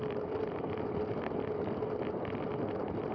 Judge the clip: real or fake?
real